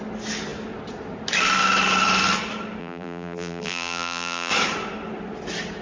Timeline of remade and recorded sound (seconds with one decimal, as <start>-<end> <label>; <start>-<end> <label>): 0.0-2.8 recorded; 2.8-4.5 remade; 4.5-5.8 recorded